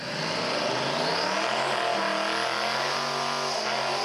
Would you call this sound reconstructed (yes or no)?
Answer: no